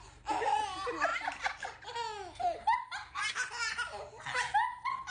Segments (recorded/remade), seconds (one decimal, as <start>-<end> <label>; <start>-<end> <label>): 0.0-5.1 recorded